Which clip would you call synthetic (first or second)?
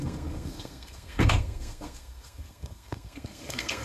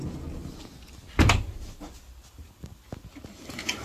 first